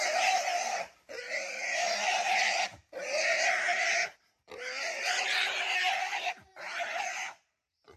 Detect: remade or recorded remade